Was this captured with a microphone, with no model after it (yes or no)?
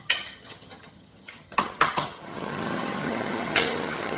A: no